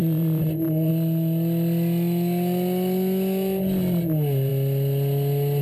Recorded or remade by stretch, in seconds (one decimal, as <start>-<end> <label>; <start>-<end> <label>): 0.0-0.9 remade; 0.9-5.6 recorded